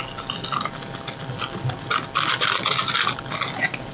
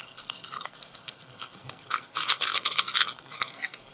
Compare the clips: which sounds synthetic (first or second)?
second